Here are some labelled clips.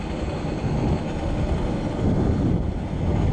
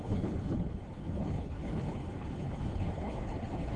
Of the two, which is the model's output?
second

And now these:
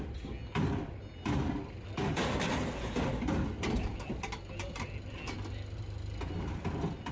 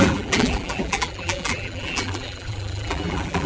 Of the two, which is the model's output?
second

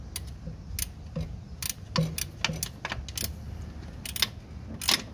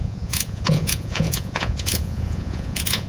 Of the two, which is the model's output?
second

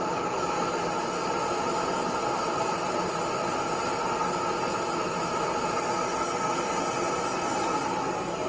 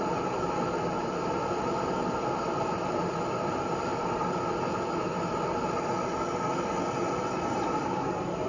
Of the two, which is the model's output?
second